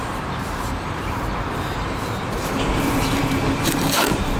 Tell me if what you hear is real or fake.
fake